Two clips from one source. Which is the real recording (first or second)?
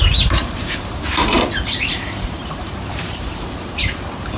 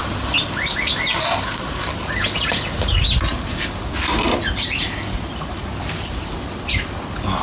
second